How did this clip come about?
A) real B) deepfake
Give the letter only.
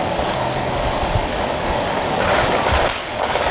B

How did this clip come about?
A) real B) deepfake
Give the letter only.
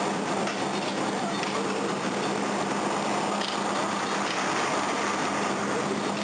A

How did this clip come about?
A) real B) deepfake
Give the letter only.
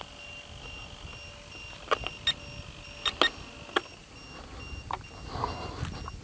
A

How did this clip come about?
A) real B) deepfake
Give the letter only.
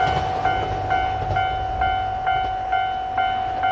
A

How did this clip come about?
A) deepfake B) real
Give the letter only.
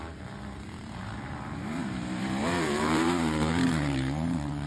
A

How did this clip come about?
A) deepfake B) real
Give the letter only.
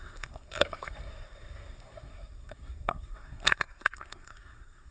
A